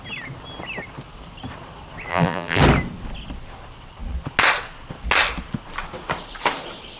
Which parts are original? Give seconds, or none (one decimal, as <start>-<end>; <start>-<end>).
0.0-2.1; 2.6-7.0